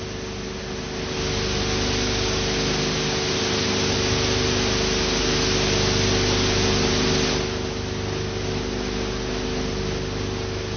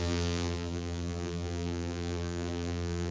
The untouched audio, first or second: first